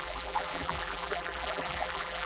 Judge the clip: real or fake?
fake